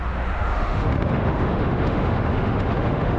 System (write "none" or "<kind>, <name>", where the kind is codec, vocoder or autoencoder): autoencoder, DAC-VAE